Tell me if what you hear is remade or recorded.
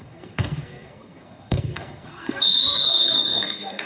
remade